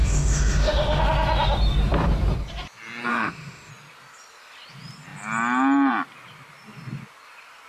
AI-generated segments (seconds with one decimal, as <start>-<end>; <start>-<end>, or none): 0.0-1.0; 3.1-3.7